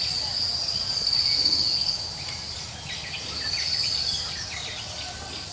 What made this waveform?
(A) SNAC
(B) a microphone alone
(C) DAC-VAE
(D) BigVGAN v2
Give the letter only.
B